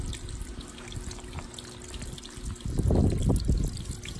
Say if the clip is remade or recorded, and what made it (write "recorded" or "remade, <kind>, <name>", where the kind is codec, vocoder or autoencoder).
recorded